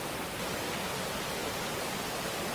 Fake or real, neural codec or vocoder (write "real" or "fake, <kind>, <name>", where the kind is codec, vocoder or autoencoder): real